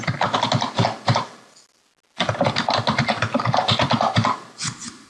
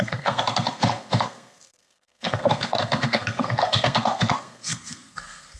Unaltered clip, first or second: first